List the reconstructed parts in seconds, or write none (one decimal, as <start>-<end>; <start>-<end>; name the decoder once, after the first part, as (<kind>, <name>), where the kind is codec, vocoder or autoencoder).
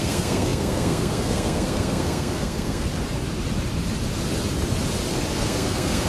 0.0-2.9 (codec, SNAC); 5.4-6.1